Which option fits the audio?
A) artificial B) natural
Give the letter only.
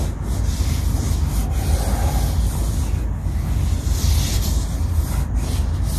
B